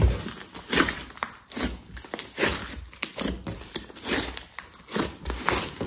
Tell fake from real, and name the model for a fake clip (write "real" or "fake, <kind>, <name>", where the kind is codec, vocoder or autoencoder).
real